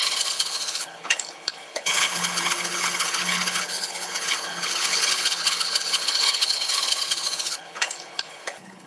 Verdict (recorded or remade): remade